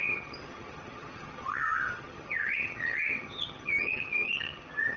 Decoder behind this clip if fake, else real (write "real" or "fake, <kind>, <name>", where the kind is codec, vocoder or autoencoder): fake, vocoder, HiFi-GAN